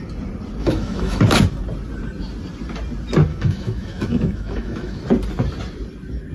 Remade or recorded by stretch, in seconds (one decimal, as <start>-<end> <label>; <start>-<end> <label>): 0.0-0.6 recorded; 0.6-1.2 remade; 1.2-3.3 recorded; 3.3-5.0 remade; 5.0-6.3 recorded

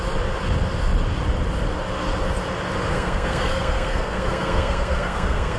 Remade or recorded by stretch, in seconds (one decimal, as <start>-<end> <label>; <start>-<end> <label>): 0.0-2.9 recorded; 2.9-5.6 remade

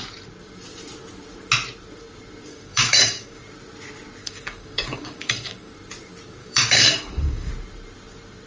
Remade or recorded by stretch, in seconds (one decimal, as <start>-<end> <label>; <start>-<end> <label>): 0.0-2.5 recorded; 2.5-3.4 remade; 3.4-4.2 recorded; 4.2-5.7 remade; 5.7-6.4 recorded; 6.4-7.5 remade; 7.5-8.5 recorded

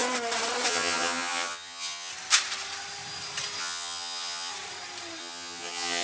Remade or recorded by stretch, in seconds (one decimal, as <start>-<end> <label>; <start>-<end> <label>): 0.0-0.7 recorded; 0.7-2.1 remade; 2.1-3.6 recorded; 3.6-4.5 remade; 4.5-5.2 recorded; 5.2-6.0 remade

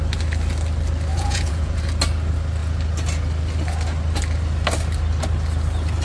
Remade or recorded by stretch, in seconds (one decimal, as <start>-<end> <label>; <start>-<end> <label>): 0.0-1.1 recorded; 1.1-1.8 remade; 1.8-6.0 recorded